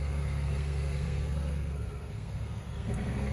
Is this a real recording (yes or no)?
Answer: no